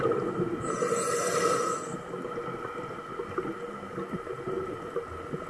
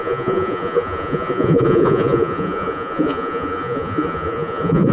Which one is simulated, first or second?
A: second